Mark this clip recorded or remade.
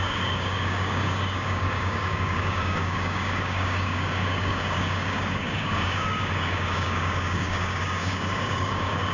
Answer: remade